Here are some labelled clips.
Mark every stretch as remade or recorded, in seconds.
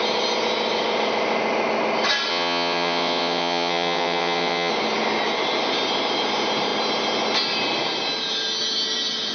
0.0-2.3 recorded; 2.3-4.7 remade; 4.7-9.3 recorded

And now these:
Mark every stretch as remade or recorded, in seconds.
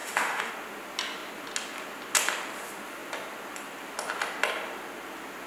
0.0-0.5 remade; 0.5-5.5 recorded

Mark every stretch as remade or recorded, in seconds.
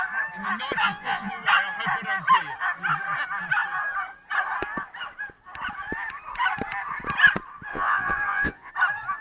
0.0-0.8 recorded; 0.8-1.3 remade; 1.3-7.7 recorded; 7.7-8.7 remade; 8.7-9.2 recorded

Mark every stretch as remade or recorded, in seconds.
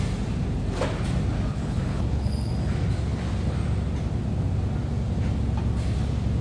0.0-1.5 recorded; 1.5-2.5 remade; 2.5-6.4 recorded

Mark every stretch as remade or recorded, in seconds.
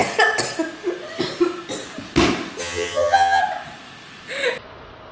0.0-2.6 recorded; 2.6-3.4 remade; 3.4-5.1 recorded